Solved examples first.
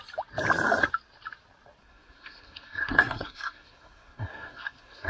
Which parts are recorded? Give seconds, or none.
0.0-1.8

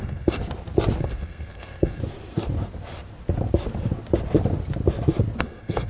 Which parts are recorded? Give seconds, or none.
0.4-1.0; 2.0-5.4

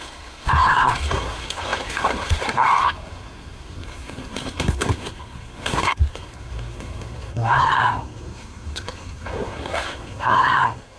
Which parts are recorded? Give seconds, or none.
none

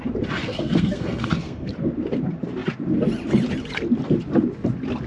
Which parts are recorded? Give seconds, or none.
0.0-0.4; 1.7-5.1